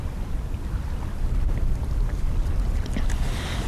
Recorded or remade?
recorded